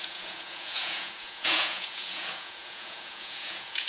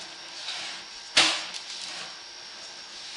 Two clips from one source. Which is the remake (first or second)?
first